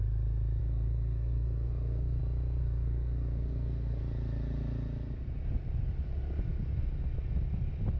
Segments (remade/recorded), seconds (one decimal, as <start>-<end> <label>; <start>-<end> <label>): 0.0-0.6 recorded; 0.6-2.2 remade; 2.2-2.6 recorded; 2.6-4.0 remade; 4.0-8.0 recorded